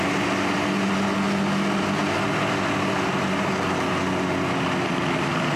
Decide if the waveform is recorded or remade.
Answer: recorded